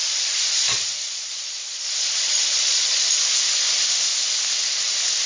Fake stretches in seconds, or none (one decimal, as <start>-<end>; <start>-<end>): 0.0-3.2